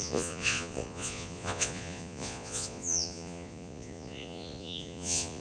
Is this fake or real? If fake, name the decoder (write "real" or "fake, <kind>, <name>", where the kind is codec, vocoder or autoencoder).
fake, vocoder, Vocos